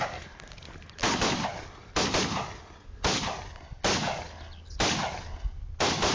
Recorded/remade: recorded